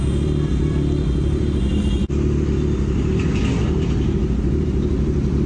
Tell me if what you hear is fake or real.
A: real